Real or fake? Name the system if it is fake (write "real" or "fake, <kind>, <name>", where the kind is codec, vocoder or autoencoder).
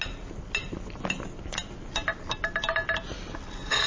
real